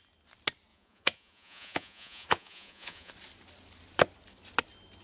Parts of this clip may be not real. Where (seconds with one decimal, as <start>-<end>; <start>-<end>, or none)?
0.7-3.1